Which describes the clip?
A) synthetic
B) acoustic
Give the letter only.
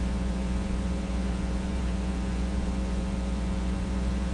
A